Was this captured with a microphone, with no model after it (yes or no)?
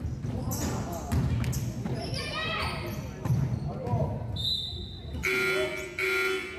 yes